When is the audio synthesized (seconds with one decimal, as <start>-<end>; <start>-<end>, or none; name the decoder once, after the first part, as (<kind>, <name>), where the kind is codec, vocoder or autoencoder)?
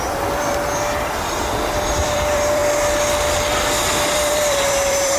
0.0-2.6 (vocoder, BigVGAN v2); 3.9-5.2